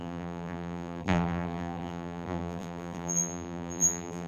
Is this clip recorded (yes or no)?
no